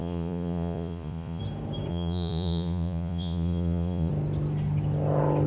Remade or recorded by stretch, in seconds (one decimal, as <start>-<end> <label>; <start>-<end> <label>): 0.0-1.4 remade; 1.4-1.9 recorded; 1.9-4.1 remade; 4.1-5.5 recorded